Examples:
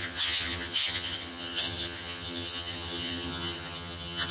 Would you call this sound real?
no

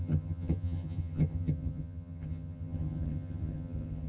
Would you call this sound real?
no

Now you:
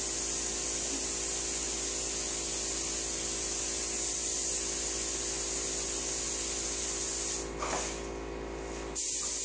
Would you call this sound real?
yes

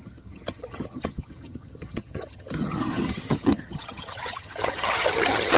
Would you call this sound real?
no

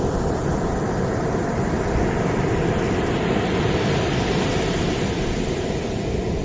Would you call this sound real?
yes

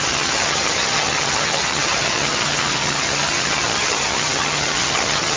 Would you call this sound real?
no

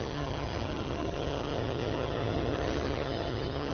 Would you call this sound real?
no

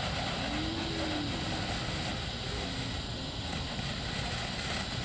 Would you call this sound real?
yes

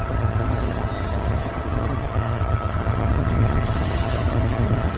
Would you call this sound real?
no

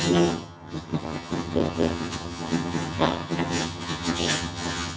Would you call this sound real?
no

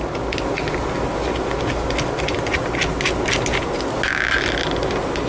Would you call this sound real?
yes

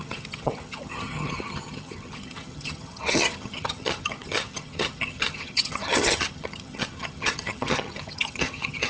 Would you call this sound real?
no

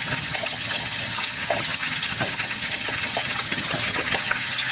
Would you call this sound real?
no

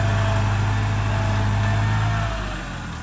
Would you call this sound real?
yes